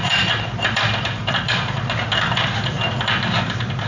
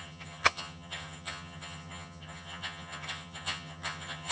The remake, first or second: second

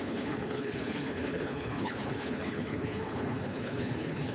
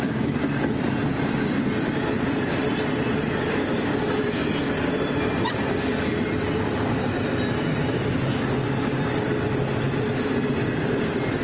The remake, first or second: first